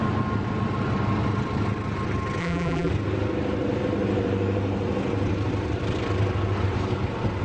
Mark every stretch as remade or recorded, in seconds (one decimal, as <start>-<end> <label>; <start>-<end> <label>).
0.0-2.4 recorded; 2.4-2.9 remade; 2.9-7.4 recorded